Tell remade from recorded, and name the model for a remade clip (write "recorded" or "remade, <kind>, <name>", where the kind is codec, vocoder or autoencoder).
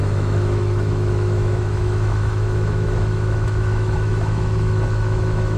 remade, autoencoder, DAC-VAE